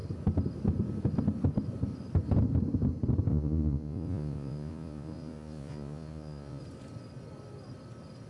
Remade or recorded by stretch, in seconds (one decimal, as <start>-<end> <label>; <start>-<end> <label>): 0.0-3.3 recorded; 3.3-6.6 remade; 6.6-8.3 recorded